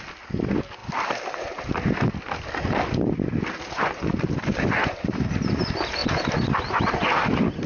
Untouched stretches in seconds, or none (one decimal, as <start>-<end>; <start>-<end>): 0.0-7.7

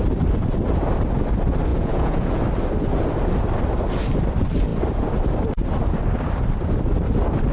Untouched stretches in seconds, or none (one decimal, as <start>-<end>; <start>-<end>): 0.0-1.7; 2.4-7.5

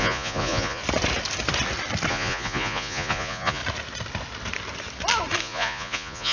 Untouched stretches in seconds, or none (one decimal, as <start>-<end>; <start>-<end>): 0.8-2.1; 3.6-5.4

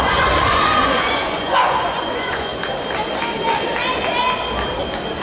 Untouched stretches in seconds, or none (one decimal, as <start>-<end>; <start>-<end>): 2.5-5.2

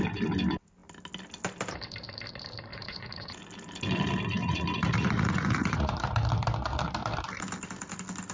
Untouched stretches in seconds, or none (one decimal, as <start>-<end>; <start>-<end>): 0.0-2.7; 3.4-4.4; 5.9-8.3